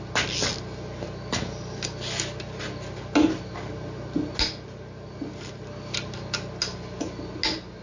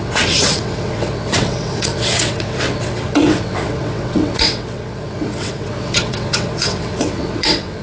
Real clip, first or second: first